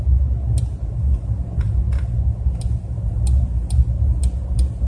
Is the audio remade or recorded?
recorded